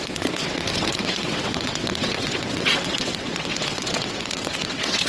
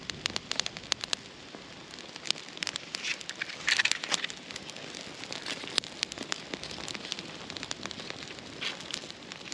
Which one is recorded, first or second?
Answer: second